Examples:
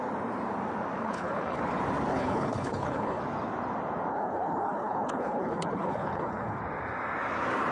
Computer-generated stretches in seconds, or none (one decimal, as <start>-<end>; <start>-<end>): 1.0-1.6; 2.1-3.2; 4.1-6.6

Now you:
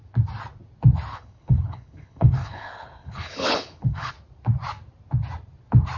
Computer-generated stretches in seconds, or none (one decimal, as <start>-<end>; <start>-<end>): 1.1-4.1

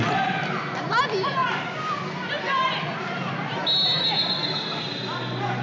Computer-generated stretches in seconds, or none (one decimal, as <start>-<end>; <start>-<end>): none